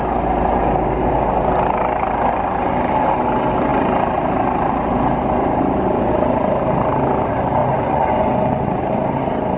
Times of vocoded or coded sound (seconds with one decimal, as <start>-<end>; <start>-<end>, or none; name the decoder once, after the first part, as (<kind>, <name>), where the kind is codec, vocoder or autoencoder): 7.6-8.8 (vocoder, Vocos)